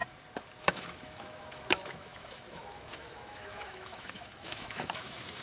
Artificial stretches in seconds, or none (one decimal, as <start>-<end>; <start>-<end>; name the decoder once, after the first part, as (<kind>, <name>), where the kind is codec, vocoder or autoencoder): 0.6-5.4 (autoencoder, DAC-VAE)